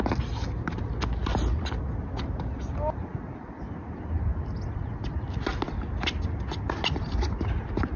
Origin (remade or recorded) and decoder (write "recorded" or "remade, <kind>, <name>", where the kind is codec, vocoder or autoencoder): recorded